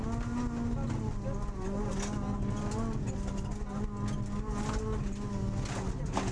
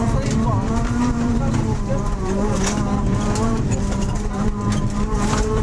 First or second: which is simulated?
second